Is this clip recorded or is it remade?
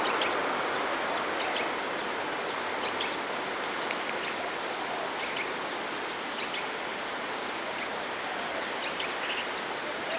recorded